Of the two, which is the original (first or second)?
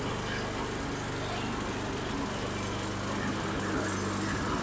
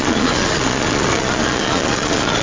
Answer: first